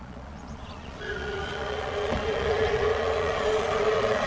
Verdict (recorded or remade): remade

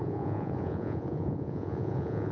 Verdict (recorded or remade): remade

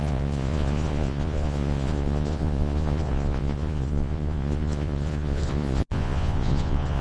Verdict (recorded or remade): remade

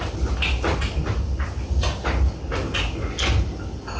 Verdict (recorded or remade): recorded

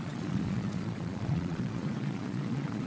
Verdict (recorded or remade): remade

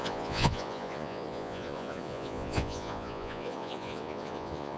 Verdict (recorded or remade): remade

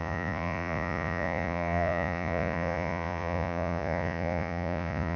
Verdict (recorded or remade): remade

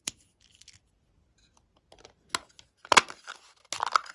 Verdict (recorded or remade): recorded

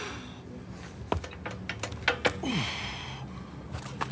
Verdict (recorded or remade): recorded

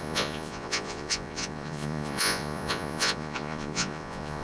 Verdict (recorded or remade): remade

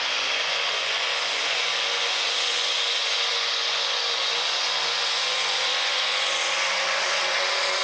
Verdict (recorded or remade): remade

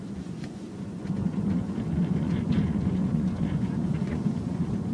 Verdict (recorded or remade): remade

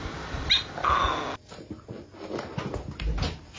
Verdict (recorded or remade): recorded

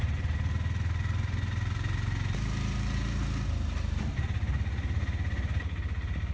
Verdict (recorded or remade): recorded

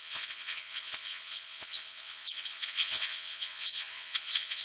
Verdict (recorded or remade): remade